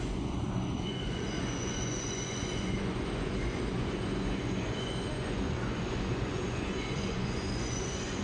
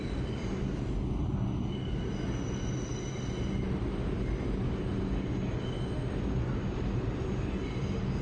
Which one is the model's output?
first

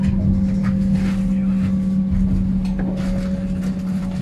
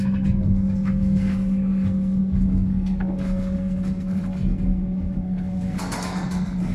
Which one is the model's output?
second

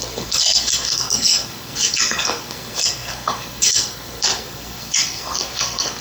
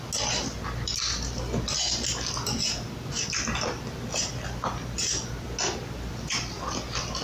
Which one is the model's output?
first